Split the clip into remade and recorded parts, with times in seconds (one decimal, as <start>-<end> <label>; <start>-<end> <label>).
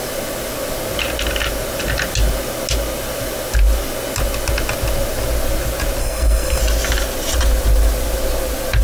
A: 0.0-6.0 recorded; 6.0-6.6 remade; 6.6-8.8 recorded